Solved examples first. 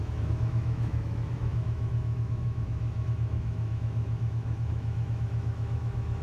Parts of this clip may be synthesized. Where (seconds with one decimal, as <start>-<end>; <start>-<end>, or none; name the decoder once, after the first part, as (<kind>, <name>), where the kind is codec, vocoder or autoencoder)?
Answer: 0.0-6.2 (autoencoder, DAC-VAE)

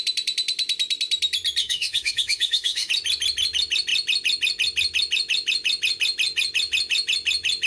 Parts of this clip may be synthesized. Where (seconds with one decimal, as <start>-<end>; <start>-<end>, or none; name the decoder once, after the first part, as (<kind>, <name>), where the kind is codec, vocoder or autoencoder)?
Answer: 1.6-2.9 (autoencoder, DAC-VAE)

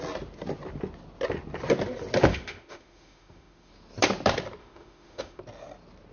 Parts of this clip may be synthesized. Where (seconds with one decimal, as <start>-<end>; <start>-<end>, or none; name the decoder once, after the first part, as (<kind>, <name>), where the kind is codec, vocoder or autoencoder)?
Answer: 2.3-3.7 (autoencoder, DAC-VAE); 4.6-5.4